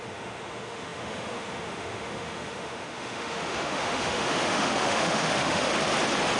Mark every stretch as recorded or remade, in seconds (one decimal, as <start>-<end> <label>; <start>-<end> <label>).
0.0-5.7 remade; 5.7-6.4 recorded